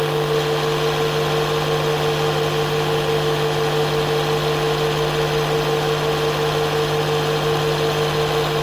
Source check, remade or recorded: recorded